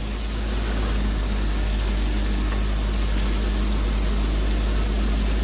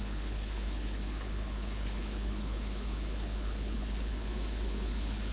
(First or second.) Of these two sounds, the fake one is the second